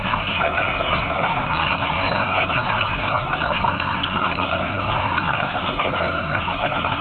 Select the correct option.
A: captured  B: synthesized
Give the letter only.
B